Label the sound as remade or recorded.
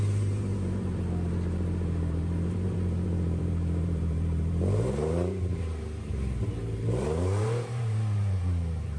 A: remade